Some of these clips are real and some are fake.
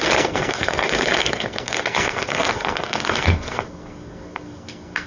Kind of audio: fake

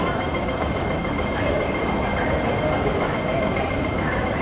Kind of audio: fake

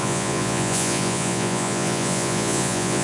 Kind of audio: fake